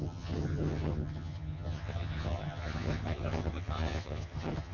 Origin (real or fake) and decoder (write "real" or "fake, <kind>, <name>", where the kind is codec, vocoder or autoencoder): fake, vocoder, HiFi-GAN